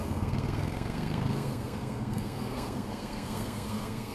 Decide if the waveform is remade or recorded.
remade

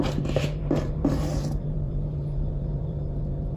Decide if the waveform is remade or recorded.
remade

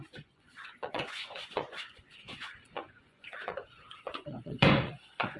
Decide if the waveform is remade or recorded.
remade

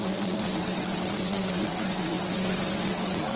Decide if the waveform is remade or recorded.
remade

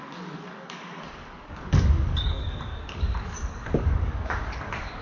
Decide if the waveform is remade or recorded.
remade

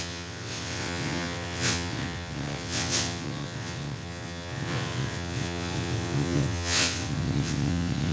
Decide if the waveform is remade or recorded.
remade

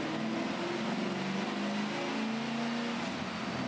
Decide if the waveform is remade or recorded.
recorded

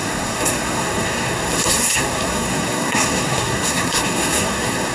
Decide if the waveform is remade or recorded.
remade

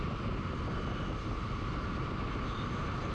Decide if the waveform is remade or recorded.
recorded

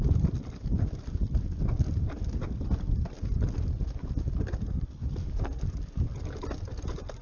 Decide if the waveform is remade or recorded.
recorded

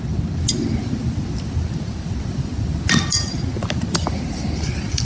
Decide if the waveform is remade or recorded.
recorded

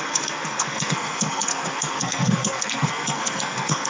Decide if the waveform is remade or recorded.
remade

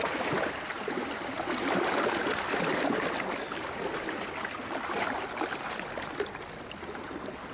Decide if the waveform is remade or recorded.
recorded